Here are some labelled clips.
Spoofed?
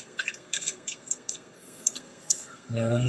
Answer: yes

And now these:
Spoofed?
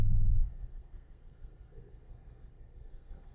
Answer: yes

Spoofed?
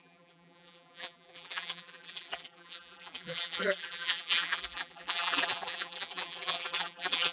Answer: yes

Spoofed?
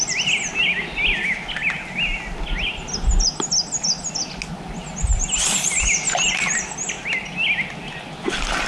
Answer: no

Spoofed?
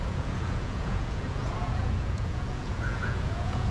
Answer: yes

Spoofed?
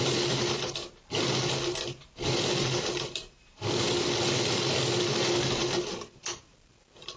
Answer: no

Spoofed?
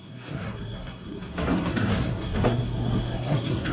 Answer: yes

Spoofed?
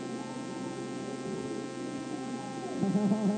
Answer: no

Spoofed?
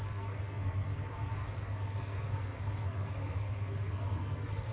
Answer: yes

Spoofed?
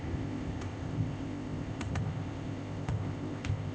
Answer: yes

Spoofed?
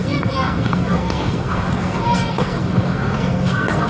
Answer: yes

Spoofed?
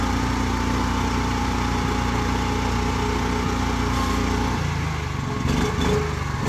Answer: no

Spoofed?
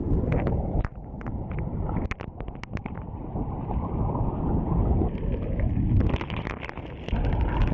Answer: no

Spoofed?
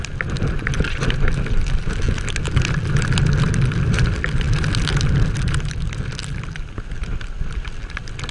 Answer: no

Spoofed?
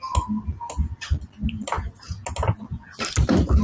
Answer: no